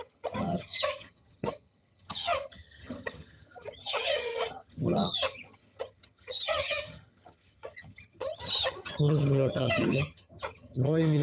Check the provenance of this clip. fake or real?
fake